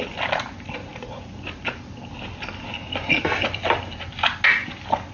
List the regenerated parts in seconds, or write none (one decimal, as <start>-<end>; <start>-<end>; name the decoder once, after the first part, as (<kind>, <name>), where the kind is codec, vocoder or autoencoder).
none